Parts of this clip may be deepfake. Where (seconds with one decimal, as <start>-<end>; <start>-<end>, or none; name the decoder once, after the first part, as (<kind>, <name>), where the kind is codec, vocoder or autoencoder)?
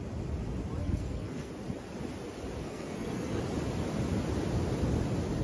0.8-1.5 (codec, SNAC); 2.6-3.4